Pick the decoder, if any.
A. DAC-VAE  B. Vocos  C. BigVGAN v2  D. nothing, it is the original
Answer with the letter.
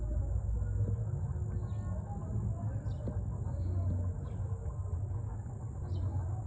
D